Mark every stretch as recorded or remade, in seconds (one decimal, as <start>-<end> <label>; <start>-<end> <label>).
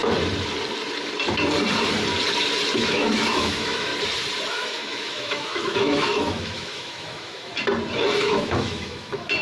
0.0-2.8 recorded; 2.8-3.9 remade; 3.9-4.5 recorded; 4.5-7.5 remade; 7.5-8.2 recorded; 8.2-9.4 remade